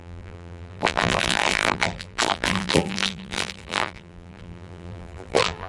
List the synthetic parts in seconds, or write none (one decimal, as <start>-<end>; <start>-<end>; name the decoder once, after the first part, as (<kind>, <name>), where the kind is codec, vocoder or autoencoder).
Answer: 0.0-5.7 (vocoder, BigVGAN v2)